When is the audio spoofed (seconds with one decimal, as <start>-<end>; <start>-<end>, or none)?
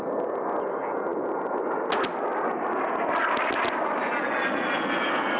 none